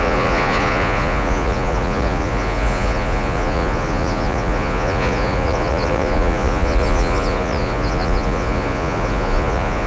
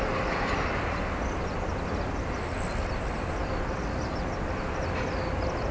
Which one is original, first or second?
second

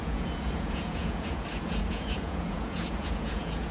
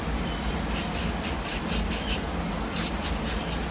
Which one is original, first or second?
second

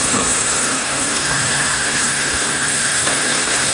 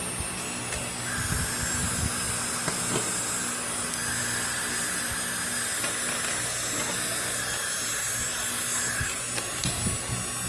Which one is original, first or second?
second